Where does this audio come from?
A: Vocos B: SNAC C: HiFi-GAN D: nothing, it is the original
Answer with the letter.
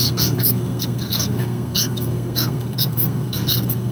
B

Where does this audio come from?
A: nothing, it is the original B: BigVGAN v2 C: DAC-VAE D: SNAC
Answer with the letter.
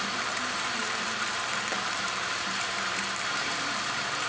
B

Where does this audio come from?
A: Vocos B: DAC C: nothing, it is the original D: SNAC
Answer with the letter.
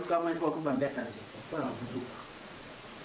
A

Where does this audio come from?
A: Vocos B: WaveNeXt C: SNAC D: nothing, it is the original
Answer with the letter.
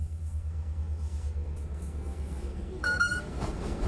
C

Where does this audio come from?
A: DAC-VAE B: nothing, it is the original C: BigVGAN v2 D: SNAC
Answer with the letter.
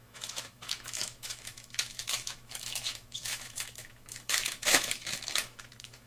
A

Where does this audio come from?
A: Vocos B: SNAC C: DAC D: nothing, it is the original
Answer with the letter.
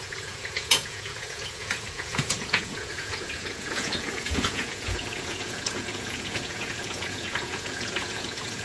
A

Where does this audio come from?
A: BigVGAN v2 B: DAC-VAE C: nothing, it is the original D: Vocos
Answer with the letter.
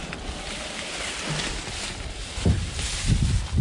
C